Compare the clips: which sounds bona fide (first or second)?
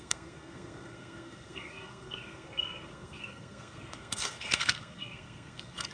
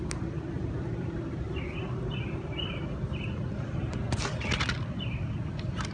second